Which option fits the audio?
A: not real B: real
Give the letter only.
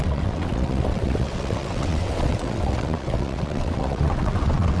A